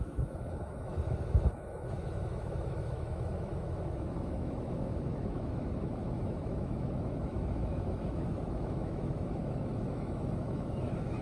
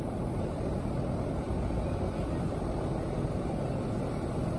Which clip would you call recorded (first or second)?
second